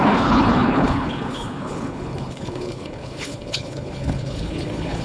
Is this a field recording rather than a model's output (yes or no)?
no